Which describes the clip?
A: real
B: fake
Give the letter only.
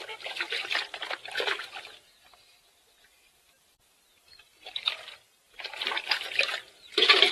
B